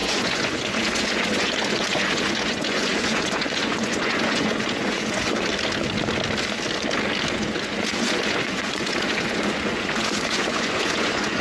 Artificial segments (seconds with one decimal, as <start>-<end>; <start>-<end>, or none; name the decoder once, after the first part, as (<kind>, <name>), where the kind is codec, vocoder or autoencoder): 0.0-5.5 (vocoder, Vocos); 7.3-11.4